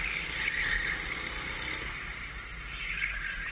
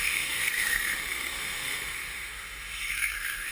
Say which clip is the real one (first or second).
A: first